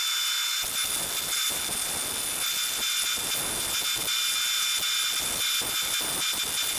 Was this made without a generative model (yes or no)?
yes